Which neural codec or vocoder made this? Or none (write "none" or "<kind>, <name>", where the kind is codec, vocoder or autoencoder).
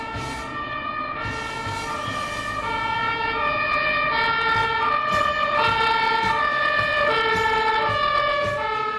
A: none